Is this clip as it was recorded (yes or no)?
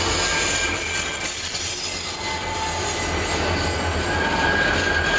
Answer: yes